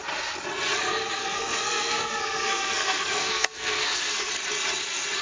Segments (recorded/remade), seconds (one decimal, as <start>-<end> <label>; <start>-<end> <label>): 0.0-1.2 recorded; 1.2-4.3 remade; 4.3-5.2 recorded